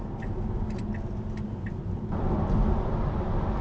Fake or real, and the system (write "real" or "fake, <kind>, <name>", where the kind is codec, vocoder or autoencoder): real